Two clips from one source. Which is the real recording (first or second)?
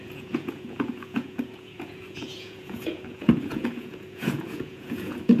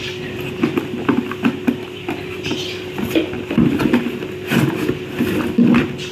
second